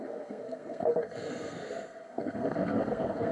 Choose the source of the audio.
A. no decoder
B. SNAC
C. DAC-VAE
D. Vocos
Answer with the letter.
B